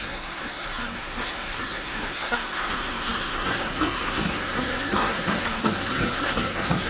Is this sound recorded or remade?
remade